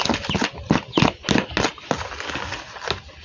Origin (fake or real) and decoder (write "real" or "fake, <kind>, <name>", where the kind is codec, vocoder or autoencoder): real